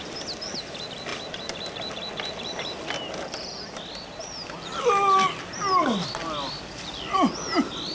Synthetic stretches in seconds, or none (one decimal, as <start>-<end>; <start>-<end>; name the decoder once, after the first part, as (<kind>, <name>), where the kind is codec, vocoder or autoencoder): none